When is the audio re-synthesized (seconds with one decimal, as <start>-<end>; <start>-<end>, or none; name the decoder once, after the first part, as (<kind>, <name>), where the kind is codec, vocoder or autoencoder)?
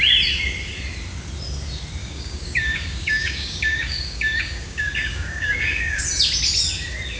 2.0-6.0 (codec, DAC)